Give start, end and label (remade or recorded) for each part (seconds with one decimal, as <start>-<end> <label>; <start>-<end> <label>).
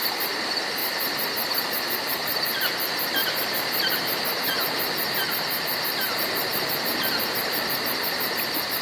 0.0-0.8 recorded; 0.8-2.6 remade; 2.6-3.2 recorded; 3.2-7.2 remade; 7.2-8.8 recorded